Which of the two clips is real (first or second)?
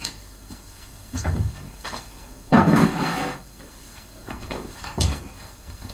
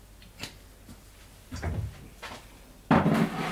second